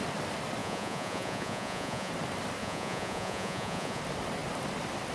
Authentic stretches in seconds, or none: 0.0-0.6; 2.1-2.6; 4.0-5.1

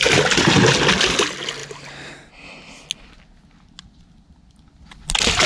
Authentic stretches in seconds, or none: 0.0-5.5

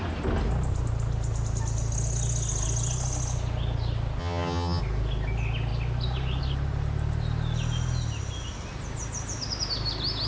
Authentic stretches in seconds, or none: 0.0-4.2; 4.8-10.3

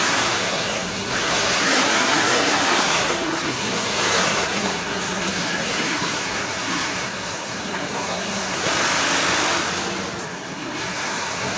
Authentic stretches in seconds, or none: 8.7-10.2